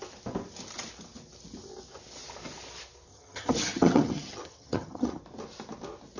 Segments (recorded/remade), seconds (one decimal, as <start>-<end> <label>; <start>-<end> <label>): 0.0-3.1 recorded; 3.1-5.2 remade; 5.2-6.2 recorded